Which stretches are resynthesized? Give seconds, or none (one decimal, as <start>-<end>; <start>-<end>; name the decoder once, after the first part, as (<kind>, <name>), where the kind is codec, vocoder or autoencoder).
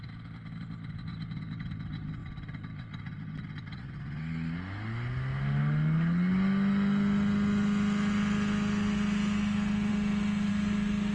none